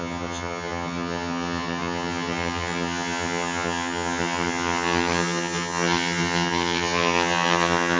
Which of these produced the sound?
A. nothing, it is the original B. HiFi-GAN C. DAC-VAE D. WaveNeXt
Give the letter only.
B